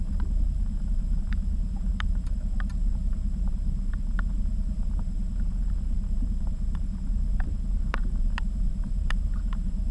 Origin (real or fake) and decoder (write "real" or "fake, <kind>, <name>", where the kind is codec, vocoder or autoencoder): fake, vocoder, BigVGAN v2